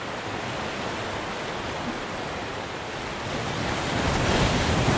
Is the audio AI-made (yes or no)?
no